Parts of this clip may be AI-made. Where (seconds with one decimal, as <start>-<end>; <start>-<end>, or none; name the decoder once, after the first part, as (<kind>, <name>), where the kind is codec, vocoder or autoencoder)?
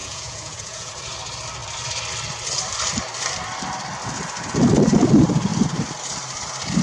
0.0-0.9 (vocoder, Vocos)